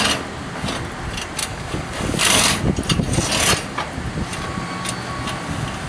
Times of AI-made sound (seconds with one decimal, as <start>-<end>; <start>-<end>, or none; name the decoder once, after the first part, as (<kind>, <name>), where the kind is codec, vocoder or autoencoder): 1.4-2.6 (codec, DAC)